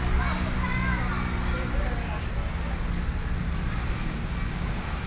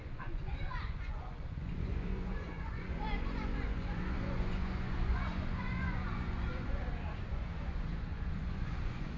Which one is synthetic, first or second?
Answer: second